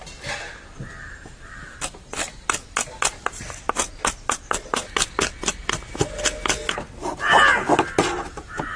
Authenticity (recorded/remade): recorded